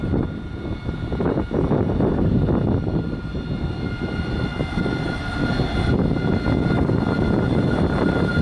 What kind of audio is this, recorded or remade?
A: recorded